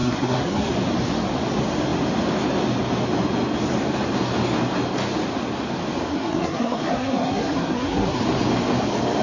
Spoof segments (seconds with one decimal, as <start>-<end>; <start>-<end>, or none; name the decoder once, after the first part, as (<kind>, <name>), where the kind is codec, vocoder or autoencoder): 0.0-0.7 (codec, SNAC); 6.1-8.2